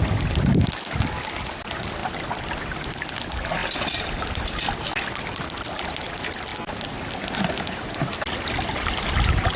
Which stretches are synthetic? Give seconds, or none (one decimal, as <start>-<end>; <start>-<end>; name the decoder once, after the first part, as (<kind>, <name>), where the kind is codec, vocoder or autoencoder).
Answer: none